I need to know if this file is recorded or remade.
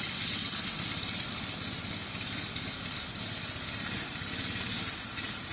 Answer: recorded